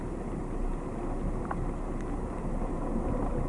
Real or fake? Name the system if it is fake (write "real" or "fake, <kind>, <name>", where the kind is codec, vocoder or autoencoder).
real